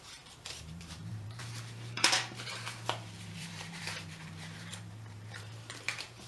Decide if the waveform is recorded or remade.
remade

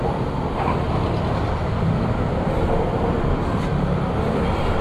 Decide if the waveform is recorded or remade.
recorded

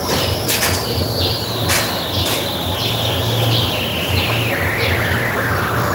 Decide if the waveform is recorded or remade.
recorded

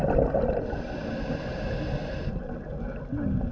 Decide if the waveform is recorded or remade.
recorded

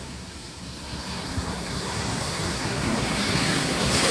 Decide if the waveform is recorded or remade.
remade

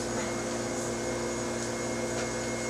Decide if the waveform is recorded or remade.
recorded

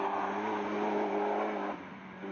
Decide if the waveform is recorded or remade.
recorded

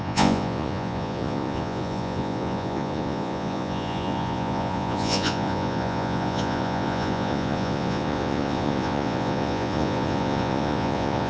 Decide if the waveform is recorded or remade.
remade